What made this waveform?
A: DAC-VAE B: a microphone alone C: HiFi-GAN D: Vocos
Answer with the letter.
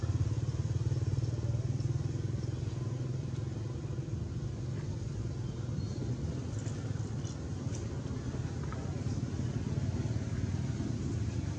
B